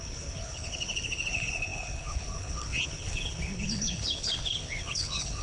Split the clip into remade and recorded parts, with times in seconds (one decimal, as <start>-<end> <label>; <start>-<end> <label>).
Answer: 0.0-5.4 remade